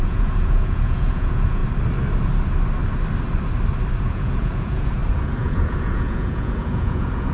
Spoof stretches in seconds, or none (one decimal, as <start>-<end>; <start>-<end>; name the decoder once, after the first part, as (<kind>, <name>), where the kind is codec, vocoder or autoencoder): 0.0-1.6 (vocoder, Vocos); 4.0-7.3